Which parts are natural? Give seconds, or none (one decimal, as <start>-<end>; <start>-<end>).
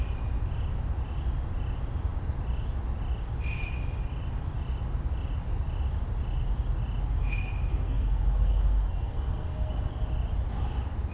0.0-7.7; 9.9-11.1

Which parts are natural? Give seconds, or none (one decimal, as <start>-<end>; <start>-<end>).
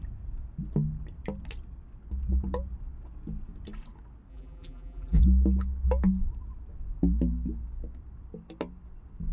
0.0-4.3; 5.2-9.3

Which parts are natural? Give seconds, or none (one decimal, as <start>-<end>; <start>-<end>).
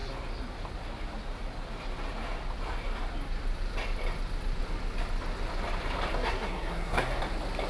0.0-6.2; 7.2-7.7